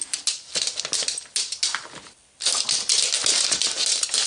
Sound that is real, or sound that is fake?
real